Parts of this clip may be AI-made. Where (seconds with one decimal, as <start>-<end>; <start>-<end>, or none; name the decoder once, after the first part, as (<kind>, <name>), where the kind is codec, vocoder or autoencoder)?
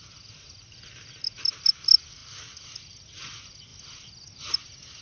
none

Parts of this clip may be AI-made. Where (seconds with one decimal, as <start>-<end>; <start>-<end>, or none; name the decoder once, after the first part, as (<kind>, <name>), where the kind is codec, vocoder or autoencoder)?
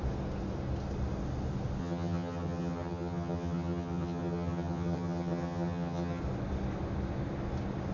1.8-6.2 (vocoder, HiFi-GAN)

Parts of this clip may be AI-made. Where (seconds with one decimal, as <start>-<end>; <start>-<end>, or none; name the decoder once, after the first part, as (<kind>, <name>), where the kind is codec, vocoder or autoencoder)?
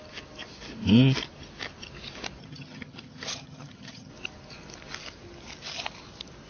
2.4-4.1 (vocoder, HiFi-GAN)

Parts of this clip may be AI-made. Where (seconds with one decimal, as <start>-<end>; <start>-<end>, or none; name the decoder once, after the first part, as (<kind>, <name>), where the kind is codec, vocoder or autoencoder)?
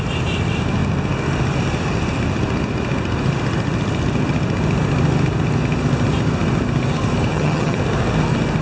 7.3-7.8 (vocoder, HiFi-GAN)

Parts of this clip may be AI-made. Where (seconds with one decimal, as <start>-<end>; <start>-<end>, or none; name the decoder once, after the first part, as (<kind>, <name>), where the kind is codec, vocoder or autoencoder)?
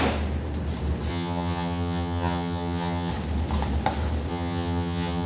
1.1-3.1 (vocoder, HiFi-GAN); 4.3-5.3